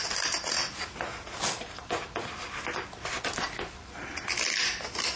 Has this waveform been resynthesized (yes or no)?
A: no